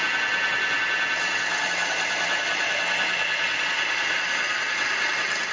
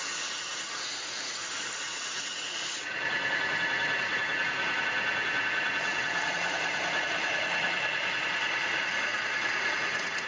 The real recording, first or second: first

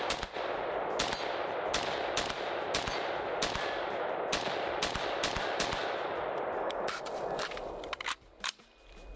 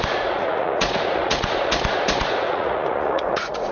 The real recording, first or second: first